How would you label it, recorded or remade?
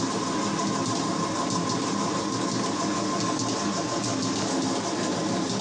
recorded